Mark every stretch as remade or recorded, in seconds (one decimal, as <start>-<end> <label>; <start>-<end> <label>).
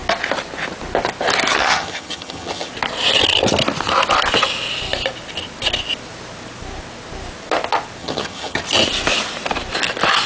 0.0-1.5 recorded; 1.5-2.7 remade; 2.7-8.0 recorded; 8.0-8.6 remade; 8.6-10.3 recorded